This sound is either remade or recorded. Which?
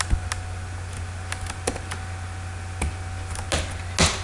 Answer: recorded